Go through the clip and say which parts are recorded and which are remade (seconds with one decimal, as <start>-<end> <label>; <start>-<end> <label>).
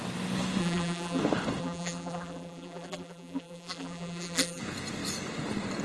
0.0-0.6 recorded; 0.6-1.2 remade; 1.2-1.6 recorded; 1.6-4.6 remade; 4.6-5.8 recorded